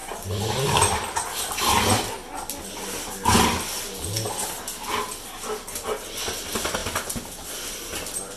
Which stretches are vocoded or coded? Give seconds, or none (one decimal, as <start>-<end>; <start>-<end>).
none